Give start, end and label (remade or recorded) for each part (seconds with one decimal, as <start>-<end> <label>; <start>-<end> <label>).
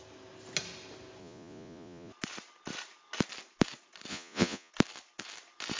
0.0-1.2 recorded; 1.2-2.1 remade; 2.1-4.1 recorded; 4.1-4.7 remade; 4.7-5.8 recorded